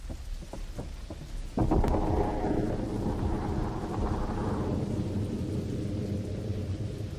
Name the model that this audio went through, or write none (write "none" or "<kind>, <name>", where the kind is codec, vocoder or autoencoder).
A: none